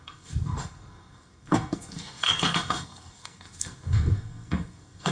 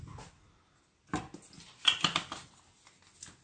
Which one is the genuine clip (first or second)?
second